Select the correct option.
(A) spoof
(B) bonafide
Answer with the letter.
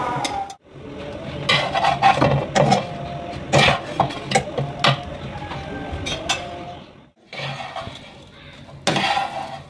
B